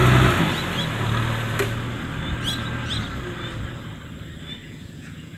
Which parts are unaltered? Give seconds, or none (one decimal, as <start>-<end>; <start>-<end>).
0.0-4.6